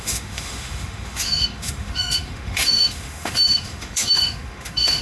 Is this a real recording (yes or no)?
no